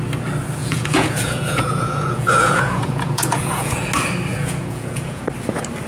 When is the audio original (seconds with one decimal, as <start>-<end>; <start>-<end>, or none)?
0.0-0.6; 3.9-4.3; 5.2-5.9